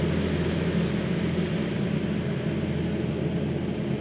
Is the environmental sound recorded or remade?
recorded